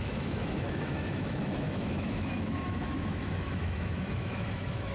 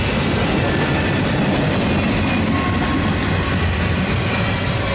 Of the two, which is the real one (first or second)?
second